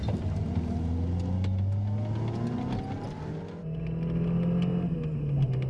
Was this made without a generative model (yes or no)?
yes